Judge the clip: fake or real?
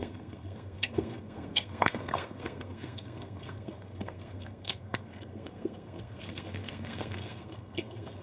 fake